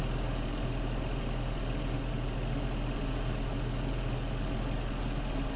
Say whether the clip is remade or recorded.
recorded